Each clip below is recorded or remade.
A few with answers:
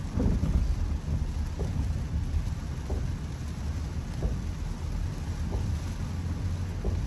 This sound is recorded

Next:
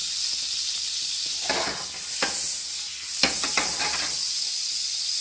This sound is recorded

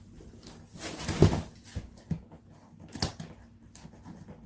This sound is recorded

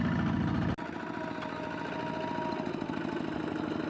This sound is recorded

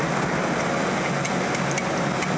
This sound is recorded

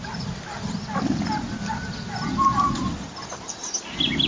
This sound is recorded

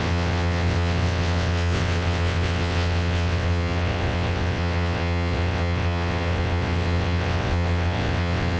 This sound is remade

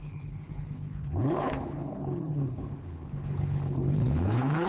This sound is remade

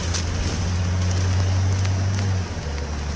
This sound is recorded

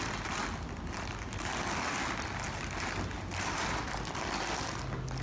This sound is recorded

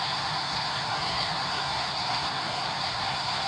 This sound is remade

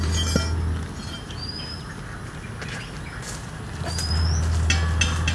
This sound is recorded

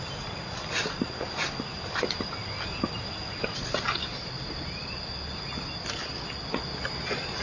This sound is recorded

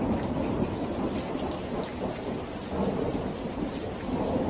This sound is recorded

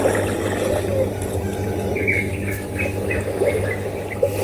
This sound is recorded